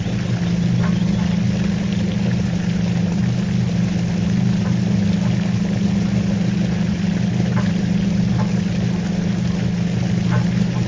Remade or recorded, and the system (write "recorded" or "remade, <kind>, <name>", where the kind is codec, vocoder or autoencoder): recorded